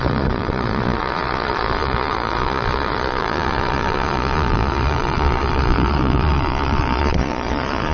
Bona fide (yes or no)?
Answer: no